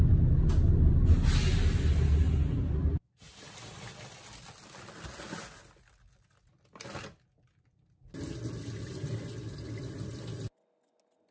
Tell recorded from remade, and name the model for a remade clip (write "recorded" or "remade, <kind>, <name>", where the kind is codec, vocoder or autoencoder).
recorded